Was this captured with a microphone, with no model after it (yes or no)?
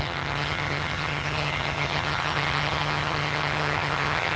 no